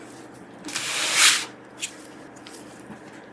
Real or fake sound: real